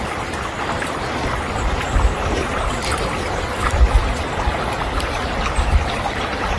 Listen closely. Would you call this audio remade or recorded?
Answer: recorded